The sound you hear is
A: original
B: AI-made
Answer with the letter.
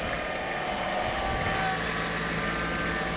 A